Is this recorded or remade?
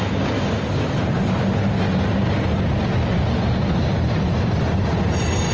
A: recorded